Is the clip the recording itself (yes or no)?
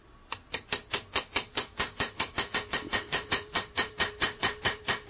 no